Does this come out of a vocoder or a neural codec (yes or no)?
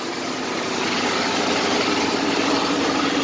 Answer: no